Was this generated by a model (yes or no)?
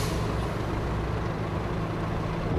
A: no